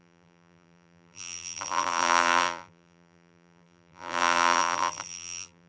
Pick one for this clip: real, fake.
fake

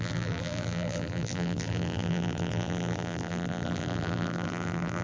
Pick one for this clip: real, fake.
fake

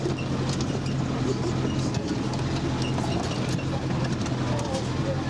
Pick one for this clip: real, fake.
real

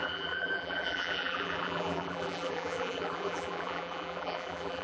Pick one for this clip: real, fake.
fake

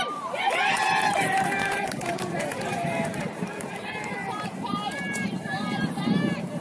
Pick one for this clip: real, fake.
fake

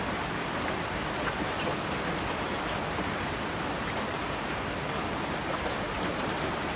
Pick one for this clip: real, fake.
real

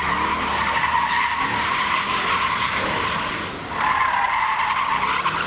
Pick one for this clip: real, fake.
real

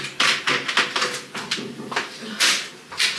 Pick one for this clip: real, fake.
real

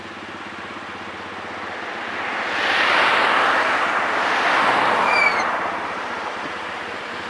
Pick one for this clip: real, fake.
real